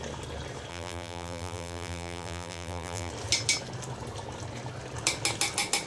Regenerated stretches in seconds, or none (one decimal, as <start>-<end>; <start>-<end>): 0.7-3.1

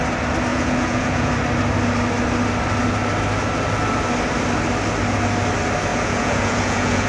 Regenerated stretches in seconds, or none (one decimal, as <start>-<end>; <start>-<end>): 0.5-1.3; 5.9-7.1